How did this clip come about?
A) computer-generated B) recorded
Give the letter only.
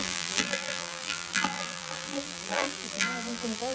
A